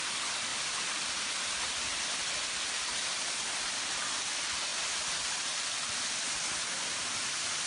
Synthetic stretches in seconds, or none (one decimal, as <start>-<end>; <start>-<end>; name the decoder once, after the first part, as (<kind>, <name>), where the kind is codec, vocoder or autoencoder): 0.5-1.1 (vocoder, BigVGAN v2); 4.7-5.3